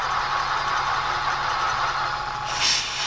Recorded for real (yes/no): yes